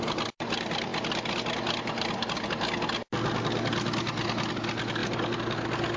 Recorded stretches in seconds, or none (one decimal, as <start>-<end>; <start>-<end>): 0.0-6.0